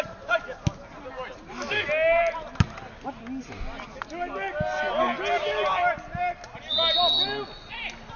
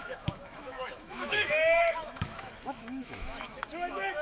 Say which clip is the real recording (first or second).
first